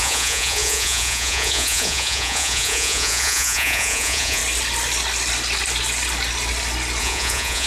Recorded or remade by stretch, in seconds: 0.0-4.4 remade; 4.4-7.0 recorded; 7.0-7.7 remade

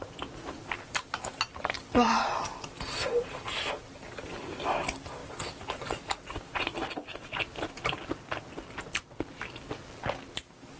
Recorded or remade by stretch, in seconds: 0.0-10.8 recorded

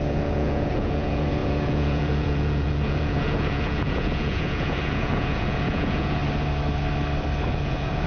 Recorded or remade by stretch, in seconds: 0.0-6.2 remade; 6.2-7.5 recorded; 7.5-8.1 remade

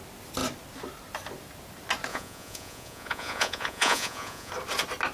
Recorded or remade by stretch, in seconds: 0.0-2.1 recorded; 2.1-4.5 remade; 4.5-5.1 recorded

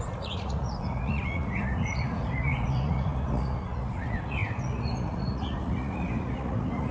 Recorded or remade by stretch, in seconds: 0.0-6.9 remade

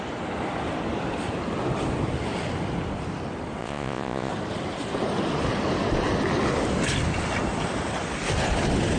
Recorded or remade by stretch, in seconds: 0.0-3.6 recorded; 3.6-4.3 remade; 4.3-9.0 recorded

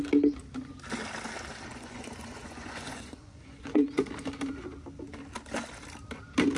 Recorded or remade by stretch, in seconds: 0.0-1.7 recorded; 1.7-4.1 remade; 4.1-6.6 recorded